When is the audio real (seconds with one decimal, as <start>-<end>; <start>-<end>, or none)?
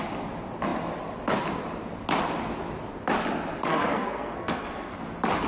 0.0-3.7; 5.0-5.5